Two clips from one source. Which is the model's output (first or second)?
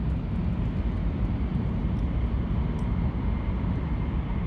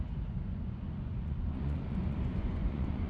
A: second